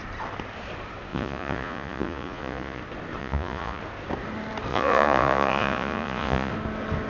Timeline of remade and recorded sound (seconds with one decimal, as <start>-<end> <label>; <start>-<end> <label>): 0.0-1.1 recorded; 1.1-2.8 remade; 2.8-3.2 recorded; 3.2-3.8 remade; 3.8-4.7 recorded; 4.7-6.5 remade; 6.5-7.1 recorded

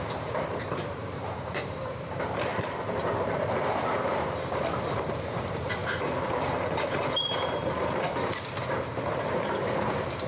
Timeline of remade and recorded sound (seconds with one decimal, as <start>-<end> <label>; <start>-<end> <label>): 0.0-5.8 remade; 5.8-9.0 recorded; 9.0-10.3 remade

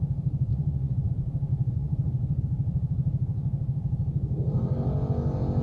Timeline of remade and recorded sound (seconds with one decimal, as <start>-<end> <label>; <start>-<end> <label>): 0.0-0.5 recorded; 0.5-1.1 remade; 1.1-1.5 recorded; 1.5-2.4 remade; 2.4-5.6 recorded